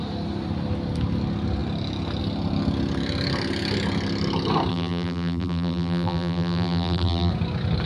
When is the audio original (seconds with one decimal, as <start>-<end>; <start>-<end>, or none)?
0.0-4.7; 7.3-7.9